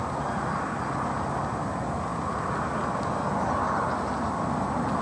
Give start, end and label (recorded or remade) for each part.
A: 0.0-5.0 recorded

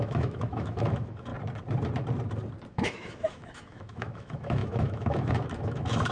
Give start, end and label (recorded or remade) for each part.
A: 0.0-1.3 remade; 1.3-2.7 recorded; 2.7-6.1 remade

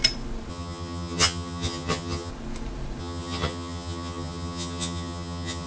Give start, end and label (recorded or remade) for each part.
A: 0.0-0.5 recorded; 0.5-2.3 remade; 2.3-3.0 recorded; 3.0-5.7 remade